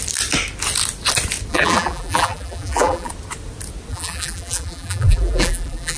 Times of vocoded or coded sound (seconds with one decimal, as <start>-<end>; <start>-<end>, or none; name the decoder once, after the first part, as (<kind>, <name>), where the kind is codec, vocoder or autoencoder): 1.5-3.1 (vocoder, BigVGAN v2); 3.9-6.0